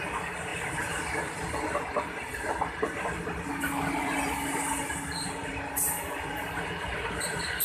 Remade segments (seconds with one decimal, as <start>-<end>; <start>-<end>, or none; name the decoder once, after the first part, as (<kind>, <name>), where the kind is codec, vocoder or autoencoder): none